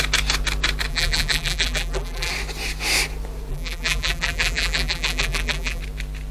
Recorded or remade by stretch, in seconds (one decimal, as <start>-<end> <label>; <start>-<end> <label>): 0.0-0.9 recorded; 0.9-2.3 remade; 2.3-3.5 recorded; 3.5-5.8 remade; 5.8-6.3 recorded